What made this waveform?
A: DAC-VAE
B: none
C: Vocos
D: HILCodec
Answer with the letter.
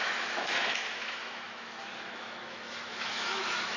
A